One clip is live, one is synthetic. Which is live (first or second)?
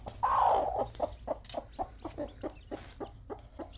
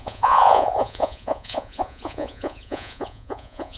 first